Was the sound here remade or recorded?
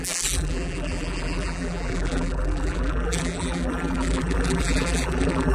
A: remade